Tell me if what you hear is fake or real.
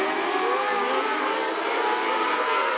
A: real